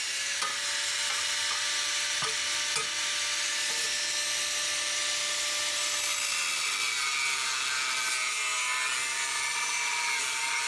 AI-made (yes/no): no